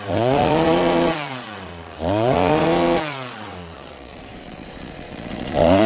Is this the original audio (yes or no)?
no